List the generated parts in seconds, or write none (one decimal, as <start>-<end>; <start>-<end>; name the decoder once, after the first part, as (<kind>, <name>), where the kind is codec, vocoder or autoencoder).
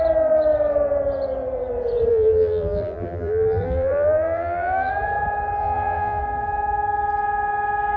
2.1-4.9 (vocoder, BigVGAN v2); 5.6-6.2